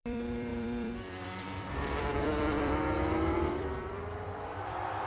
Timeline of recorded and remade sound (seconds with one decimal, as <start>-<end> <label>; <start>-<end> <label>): 0.0-5.1 remade